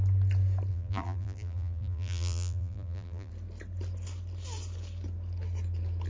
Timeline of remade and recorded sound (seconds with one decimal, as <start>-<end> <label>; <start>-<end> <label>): 0.0-0.7 recorded; 0.7-3.3 remade; 3.3-6.1 recorded